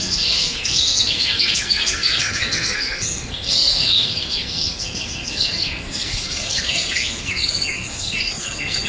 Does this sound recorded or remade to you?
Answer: remade